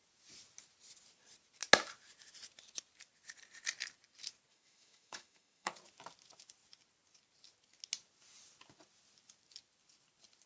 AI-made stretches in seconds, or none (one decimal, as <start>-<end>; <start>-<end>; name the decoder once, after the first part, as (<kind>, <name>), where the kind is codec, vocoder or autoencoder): 4.5-5.7 (autoencoder, DAC-VAE)